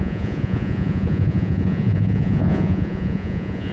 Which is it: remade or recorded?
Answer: remade